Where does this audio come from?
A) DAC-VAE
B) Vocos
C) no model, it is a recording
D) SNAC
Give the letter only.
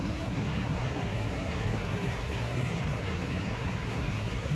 D